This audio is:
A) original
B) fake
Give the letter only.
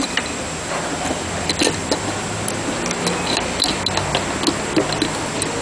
A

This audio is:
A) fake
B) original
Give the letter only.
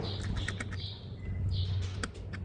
B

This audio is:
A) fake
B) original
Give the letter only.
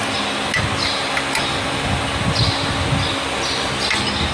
B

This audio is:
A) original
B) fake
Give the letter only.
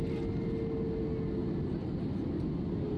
A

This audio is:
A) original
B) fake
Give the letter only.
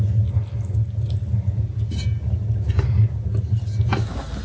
A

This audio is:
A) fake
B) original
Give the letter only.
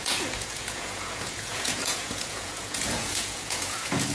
A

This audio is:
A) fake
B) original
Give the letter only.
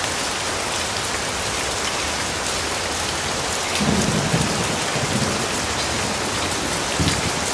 B